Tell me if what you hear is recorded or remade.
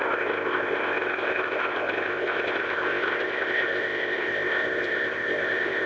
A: remade